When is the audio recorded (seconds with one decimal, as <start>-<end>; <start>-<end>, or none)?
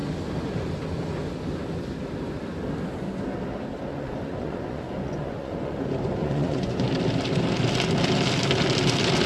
0.0-3.9; 5.8-6.2; 6.9-9.3